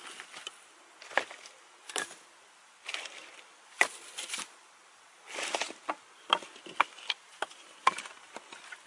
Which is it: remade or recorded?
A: recorded